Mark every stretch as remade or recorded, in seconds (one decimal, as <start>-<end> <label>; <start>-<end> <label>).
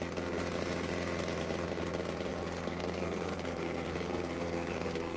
0.0-2.3 recorded; 2.3-5.2 remade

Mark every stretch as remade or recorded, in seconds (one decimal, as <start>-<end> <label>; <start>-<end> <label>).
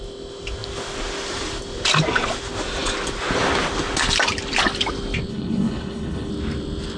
0.0-5.3 recorded; 5.3-6.3 remade; 6.3-7.0 recorded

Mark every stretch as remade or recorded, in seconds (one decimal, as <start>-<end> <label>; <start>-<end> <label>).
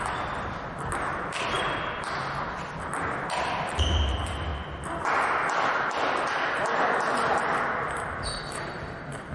0.0-8.4 recorded; 8.4-9.3 remade